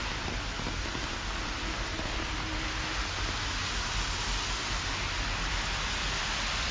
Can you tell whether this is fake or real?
real